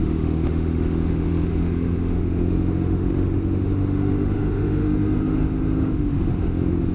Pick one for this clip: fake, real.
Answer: fake